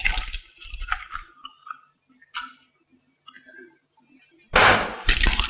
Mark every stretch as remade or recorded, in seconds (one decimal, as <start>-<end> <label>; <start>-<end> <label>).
0.0-1.4 remade; 1.4-4.7 recorded; 4.7-5.5 remade